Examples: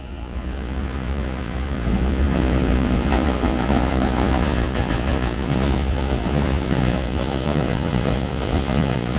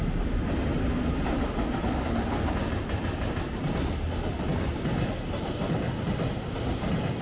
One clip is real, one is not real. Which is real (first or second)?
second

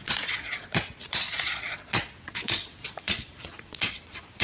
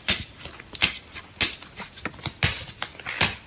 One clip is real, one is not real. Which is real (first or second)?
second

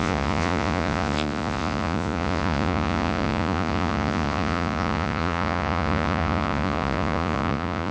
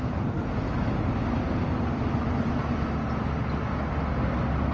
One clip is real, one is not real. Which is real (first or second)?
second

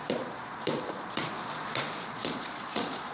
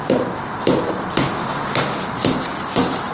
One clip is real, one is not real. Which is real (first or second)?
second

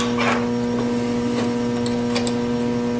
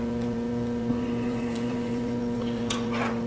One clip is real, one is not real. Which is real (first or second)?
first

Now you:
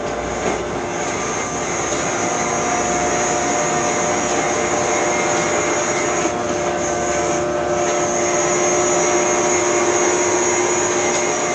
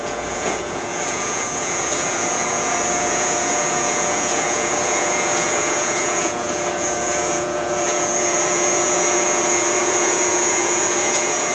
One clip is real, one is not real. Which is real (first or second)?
first